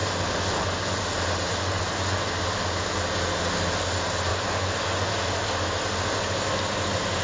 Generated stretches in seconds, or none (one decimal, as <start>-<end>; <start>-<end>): 0.0-1.0; 1.6-2.3; 4.3-5.1